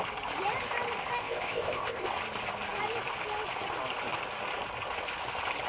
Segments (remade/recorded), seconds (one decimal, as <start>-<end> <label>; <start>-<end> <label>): 0.0-1.2 recorded; 1.2-2.1 remade; 2.1-5.7 recorded